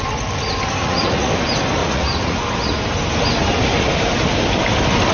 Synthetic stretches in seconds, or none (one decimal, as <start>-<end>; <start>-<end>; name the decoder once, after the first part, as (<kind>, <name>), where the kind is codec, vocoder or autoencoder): 0.8-1.3 (vocoder, Vocos); 1.8-2.4